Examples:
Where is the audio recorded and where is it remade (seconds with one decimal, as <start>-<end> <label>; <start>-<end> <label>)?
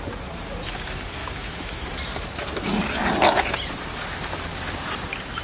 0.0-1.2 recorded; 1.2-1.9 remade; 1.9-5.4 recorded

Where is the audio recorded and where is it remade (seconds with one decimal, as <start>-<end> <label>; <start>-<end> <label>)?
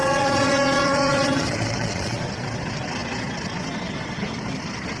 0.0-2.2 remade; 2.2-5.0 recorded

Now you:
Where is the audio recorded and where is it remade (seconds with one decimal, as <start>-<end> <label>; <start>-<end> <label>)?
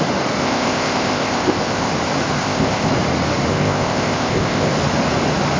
0.0-0.4 recorded; 0.4-1.9 remade; 1.9-2.4 recorded; 2.4-2.9 remade; 2.9-3.5 recorded; 3.5-4.7 remade; 4.7-5.6 recorded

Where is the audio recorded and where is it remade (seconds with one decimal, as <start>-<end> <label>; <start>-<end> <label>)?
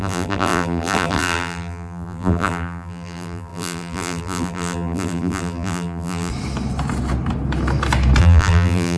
0.0-6.3 remade; 6.3-8.2 recorded; 8.2-9.0 remade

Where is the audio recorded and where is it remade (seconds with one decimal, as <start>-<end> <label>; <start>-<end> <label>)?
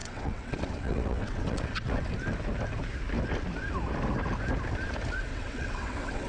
0.0-2.0 remade; 2.0-5.3 recorded; 5.3-6.3 remade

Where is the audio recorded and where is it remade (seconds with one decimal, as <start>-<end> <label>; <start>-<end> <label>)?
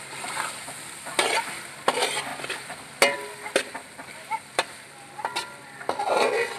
0.0-6.6 recorded